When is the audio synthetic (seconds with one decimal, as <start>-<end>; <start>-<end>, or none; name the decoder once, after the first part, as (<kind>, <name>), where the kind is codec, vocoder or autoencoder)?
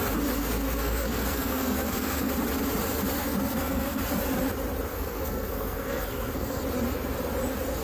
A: 0.4-2.3 (codec, SNAC); 3.2-4.0; 4.9-6.6